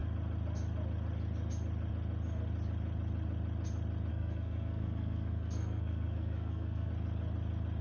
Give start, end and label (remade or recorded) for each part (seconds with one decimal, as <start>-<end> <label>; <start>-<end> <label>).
0.0-4.1 recorded; 4.1-6.9 remade; 6.9-7.8 recorded